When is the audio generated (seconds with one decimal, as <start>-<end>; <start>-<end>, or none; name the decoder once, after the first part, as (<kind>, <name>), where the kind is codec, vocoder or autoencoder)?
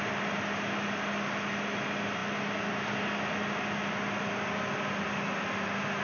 none